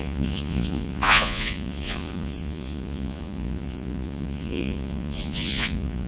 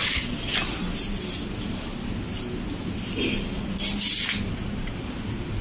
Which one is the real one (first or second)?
second